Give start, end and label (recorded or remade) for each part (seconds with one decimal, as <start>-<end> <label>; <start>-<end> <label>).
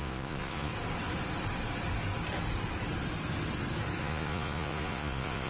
0.0-0.7 remade; 0.7-4.0 recorded; 4.0-5.5 remade